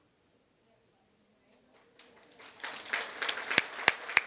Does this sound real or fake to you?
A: real